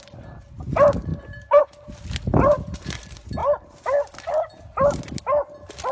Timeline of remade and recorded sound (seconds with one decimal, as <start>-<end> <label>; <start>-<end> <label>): 0.0-5.9 recorded